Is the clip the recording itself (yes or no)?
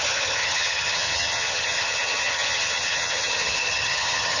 no